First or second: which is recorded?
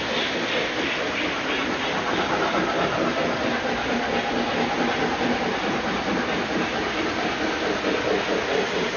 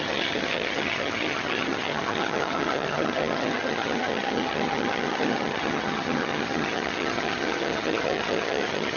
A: first